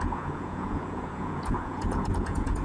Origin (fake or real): fake